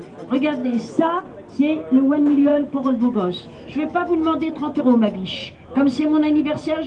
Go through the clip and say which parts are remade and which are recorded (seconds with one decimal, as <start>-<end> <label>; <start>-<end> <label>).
0.0-0.6 recorded; 0.6-1.2 remade; 1.2-2.5 recorded; 2.5-4.8 remade; 4.8-5.4 recorded; 5.4-6.4 remade; 6.4-6.9 recorded